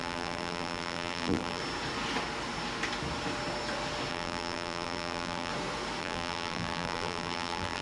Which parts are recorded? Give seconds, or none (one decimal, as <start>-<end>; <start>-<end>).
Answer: 1.6-4.1; 5.5-6.0